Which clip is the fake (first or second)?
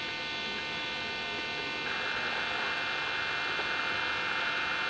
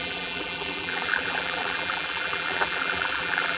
second